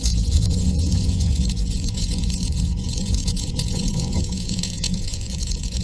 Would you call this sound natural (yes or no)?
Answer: no